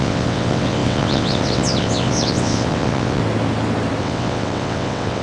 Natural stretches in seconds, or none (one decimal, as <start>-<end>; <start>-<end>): 3.2-4.0

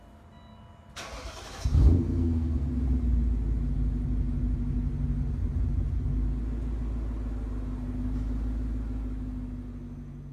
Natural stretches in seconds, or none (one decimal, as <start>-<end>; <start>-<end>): 0.0-1.7; 2.7-10.3

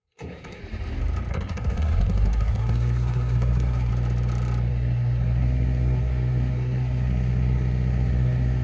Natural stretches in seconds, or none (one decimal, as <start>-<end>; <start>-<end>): 0.6-1.3; 3.9-4.7

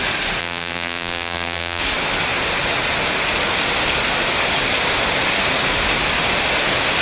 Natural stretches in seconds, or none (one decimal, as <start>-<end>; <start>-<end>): 0.0-0.4; 1.8-7.0

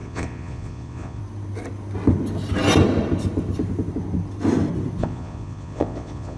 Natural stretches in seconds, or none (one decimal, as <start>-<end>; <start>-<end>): 1.2-5.0

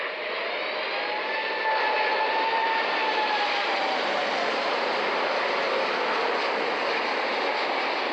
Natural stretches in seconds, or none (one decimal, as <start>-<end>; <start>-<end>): 0.0-2.6; 5.1-8.1